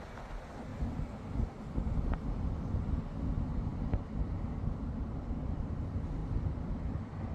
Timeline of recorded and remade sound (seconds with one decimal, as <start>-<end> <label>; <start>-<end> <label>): 0.0-0.7 remade; 0.7-1.7 recorded; 1.7-7.3 remade